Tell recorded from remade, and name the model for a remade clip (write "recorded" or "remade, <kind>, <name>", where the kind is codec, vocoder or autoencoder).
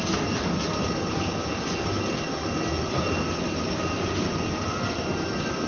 recorded